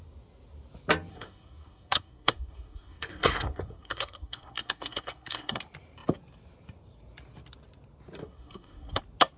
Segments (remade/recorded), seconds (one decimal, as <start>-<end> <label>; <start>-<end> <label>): 0.0-1.1 recorded; 1.1-5.6 remade; 5.6-8.2 recorded; 8.2-9.0 remade; 9.0-9.4 recorded